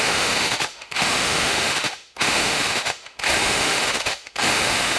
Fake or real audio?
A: fake